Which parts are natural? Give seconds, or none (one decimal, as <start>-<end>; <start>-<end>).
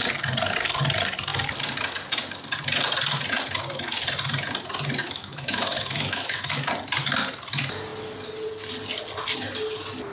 0.0-5.0; 6.7-10.1